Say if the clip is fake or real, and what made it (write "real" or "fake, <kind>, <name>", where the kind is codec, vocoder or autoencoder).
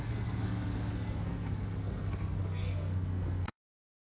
fake, codec, SNAC